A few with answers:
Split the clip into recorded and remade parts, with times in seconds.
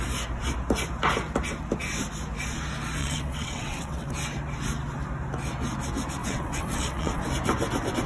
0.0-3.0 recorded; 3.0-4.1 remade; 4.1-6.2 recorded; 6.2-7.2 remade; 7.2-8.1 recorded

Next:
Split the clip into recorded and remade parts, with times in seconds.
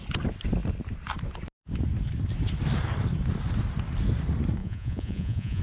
0.0-4.6 recorded; 4.6-5.6 remade